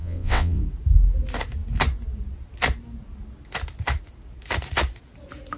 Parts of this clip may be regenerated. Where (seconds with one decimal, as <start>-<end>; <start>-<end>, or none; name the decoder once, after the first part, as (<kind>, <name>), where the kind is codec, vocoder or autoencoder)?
0.0-0.6 (vocoder, WaveNeXt)